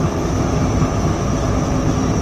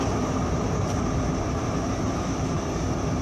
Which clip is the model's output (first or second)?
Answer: second